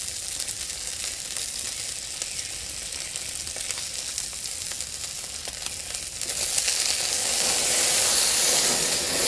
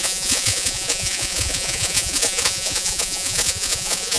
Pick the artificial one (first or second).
second